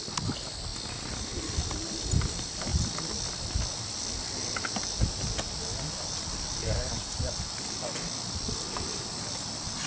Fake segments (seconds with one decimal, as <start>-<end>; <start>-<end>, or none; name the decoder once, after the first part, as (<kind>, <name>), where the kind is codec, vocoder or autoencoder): none